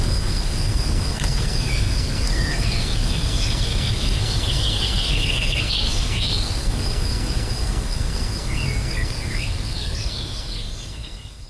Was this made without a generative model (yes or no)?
no